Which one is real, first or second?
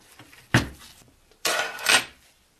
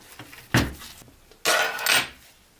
second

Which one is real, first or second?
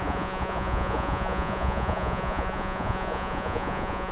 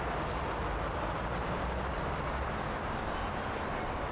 second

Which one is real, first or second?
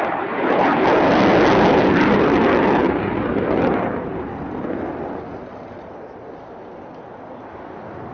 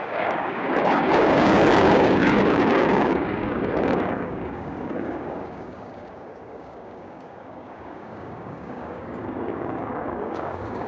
first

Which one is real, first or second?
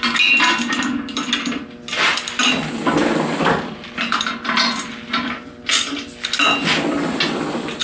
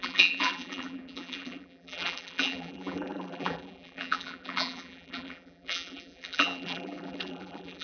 first